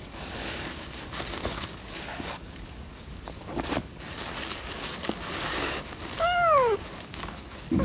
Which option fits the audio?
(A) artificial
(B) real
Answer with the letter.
A